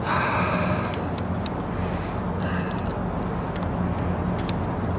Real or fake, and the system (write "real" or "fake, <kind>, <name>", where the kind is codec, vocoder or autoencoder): real